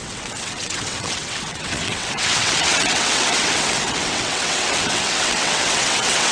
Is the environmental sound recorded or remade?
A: remade